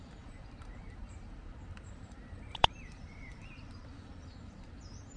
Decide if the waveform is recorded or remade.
remade